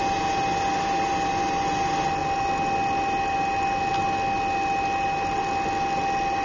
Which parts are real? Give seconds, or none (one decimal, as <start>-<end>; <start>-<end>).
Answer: 0.0-6.4